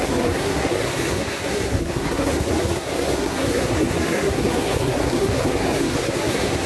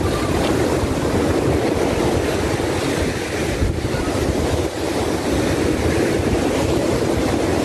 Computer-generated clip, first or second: first